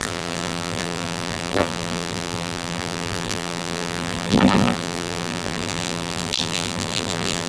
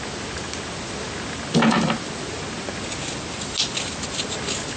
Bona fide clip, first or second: second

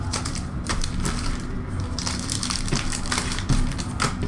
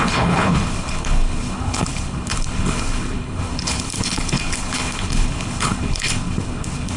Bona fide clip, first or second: first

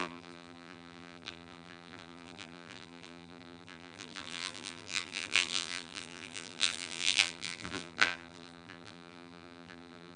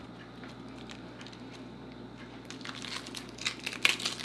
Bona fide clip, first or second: second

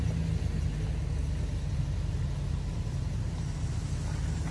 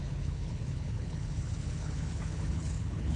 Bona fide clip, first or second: first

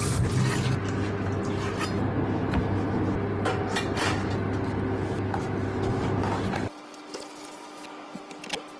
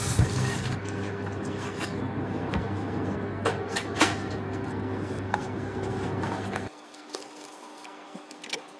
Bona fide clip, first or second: first